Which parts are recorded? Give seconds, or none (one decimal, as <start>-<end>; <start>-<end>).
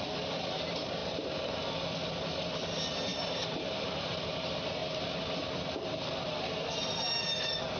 0.0-1.0; 1.5-3.1; 4.2-7.8